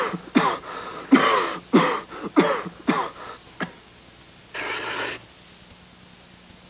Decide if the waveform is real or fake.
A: real